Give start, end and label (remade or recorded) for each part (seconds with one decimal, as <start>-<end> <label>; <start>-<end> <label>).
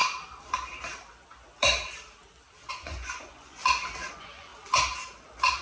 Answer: 0.0-2.7 recorded; 2.7-3.6 remade; 3.6-4.1 recorded; 4.1-4.5 remade; 4.5-5.6 recorded